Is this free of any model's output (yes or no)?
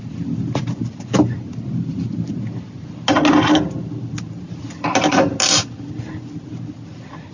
yes